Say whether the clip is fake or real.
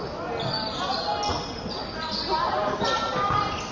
real